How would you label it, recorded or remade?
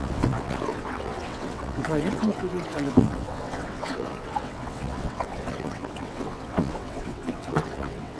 remade